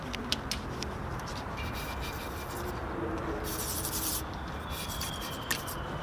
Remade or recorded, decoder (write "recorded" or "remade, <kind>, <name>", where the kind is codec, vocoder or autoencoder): remade, vocoder, BigVGAN v2